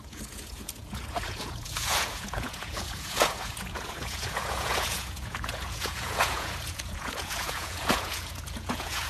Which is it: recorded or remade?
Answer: remade